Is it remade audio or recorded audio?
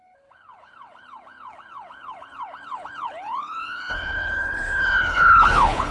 remade